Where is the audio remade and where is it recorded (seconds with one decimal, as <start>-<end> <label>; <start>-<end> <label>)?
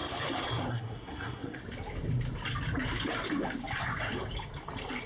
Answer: 0.0-0.7 recorded; 0.7-1.6 remade; 1.6-5.1 recorded